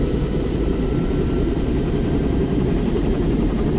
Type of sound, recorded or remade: remade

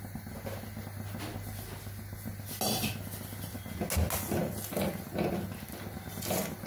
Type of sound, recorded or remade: recorded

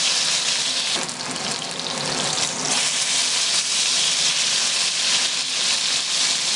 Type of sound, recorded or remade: recorded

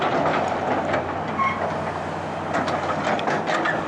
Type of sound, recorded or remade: recorded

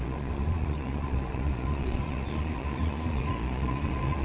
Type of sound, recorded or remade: remade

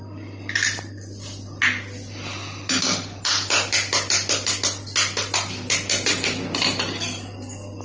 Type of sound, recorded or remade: recorded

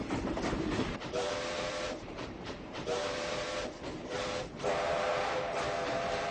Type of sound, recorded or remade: remade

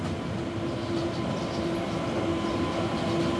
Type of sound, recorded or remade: recorded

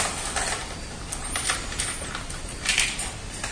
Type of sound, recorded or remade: recorded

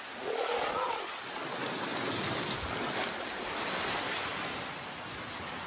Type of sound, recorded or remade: recorded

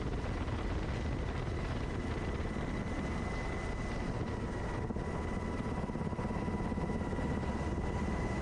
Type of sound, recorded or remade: recorded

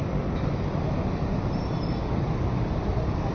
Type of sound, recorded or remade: recorded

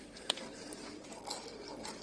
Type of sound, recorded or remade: recorded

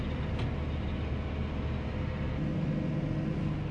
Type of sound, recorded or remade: recorded